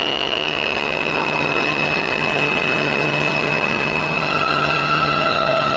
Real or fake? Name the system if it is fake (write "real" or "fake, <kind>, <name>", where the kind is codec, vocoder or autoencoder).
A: fake, vocoder, HiFi-GAN